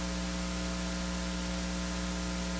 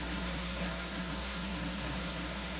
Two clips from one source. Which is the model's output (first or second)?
second